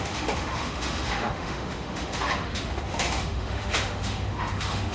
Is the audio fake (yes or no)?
yes